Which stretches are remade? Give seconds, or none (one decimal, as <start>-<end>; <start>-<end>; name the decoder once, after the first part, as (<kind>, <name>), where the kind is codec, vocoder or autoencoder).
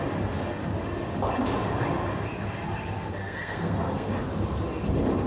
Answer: 3.2-4.1 (codec, SNAC)